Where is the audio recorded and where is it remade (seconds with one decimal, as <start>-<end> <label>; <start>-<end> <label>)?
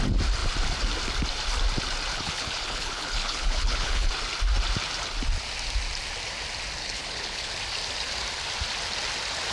0.0-2.1 recorded; 2.1-4.1 remade; 4.1-6.8 recorded; 6.8-7.5 remade; 7.5-9.5 recorded